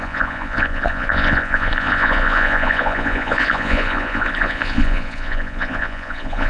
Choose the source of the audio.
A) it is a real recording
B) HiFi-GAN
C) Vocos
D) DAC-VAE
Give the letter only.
C